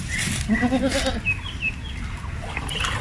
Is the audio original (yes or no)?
yes